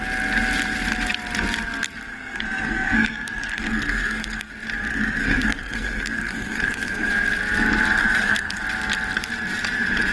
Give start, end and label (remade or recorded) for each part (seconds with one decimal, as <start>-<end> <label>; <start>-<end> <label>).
0.0-2.1 recorded; 2.1-4.5 remade; 4.5-4.9 recorded; 4.9-7.1 remade; 7.1-8.0 recorded; 8.0-8.6 remade; 8.6-10.1 recorded